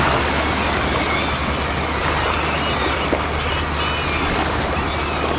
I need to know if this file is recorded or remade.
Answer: recorded